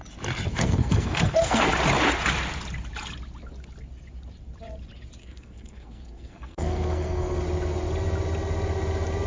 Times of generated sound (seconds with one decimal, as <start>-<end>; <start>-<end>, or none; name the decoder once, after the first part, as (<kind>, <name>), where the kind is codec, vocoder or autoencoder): 0.5-1.7 (codec, SNAC); 5.2-7.4